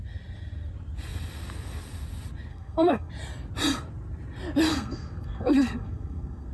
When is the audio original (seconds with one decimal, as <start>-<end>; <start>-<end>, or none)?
0.0-2.5; 3.1-4.7